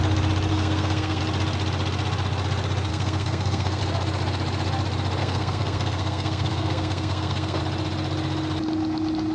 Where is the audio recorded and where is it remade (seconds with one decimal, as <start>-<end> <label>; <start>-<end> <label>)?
0.0-0.5 recorded; 0.5-1.2 remade; 1.2-2.9 recorded; 2.9-3.8 remade; 3.8-5.2 recorded; 5.2-7.6 remade; 7.6-9.3 recorded